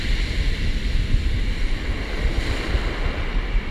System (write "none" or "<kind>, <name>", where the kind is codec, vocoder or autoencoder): none